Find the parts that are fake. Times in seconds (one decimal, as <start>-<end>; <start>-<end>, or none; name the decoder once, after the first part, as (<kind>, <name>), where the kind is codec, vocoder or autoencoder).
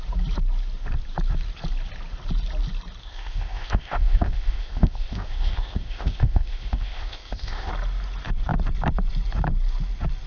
3.0-7.7 (codec, ZipCodec)